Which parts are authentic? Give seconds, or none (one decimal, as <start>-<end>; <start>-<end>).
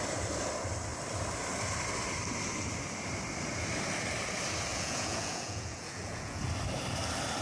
0.0-4.7; 6.4-7.4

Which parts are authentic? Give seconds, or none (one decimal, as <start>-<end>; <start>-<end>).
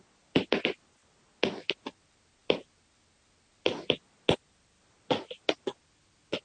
0.0-6.4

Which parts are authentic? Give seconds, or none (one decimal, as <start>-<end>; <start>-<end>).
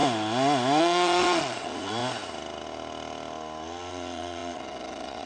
0.0-0.8; 2.0-3.9